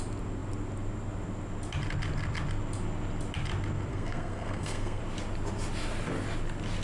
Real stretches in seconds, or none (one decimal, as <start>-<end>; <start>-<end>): 0.0-3.9; 5.0-6.8